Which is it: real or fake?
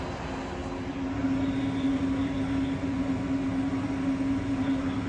real